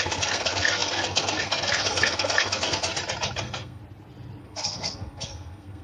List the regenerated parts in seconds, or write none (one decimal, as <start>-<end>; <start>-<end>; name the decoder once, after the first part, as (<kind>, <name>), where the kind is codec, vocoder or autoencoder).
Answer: 0.0-2.9 (codec, SNAC); 3.4-3.8; 4.4-5.8